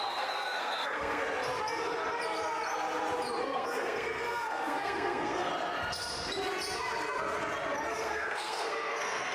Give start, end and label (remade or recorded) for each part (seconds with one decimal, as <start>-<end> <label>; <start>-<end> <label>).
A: 0.0-1.2 remade; 1.2-3.4 recorded; 3.4-5.5 remade; 5.5-7.9 recorded; 7.9-9.3 remade